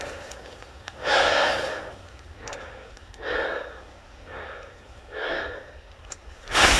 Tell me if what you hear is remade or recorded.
remade